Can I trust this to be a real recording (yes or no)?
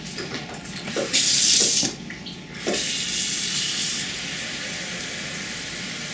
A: yes